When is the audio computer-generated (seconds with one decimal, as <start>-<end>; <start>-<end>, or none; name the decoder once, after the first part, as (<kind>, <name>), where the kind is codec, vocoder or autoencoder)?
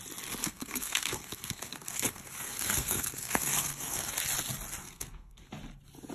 0.4-4.1 (codec, SNAC); 4.8-5.5